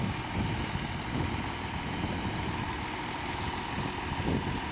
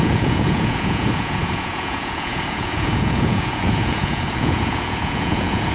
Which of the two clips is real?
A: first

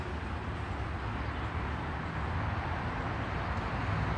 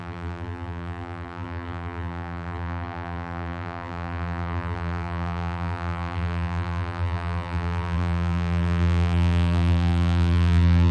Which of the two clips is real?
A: first